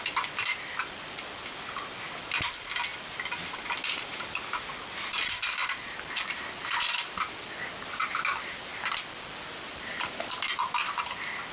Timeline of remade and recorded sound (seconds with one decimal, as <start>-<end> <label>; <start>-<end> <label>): 0.0-11.5 recorded